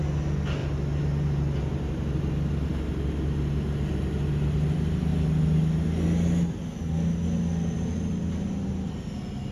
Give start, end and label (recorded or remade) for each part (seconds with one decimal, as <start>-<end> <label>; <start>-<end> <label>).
0.0-0.6 recorded; 0.6-2.3 remade; 2.3-9.5 recorded